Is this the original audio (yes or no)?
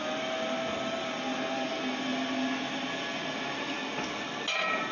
yes